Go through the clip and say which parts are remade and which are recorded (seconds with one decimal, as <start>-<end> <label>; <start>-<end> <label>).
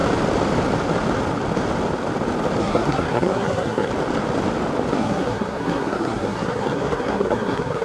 0.0-2.6 recorded; 2.6-3.9 remade; 3.9-4.9 recorded; 4.9-7.8 remade